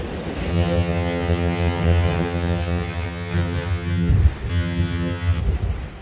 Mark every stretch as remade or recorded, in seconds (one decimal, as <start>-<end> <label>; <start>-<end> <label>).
0.0-0.5 recorded; 0.5-4.1 remade; 4.1-4.5 recorded; 4.5-5.4 remade; 5.4-6.0 recorded